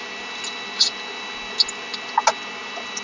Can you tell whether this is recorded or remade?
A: recorded